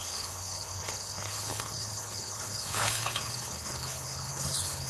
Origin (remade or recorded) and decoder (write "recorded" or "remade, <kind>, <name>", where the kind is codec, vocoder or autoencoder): remade, codec, HILCodec